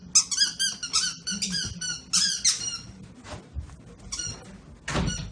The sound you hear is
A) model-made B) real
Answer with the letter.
B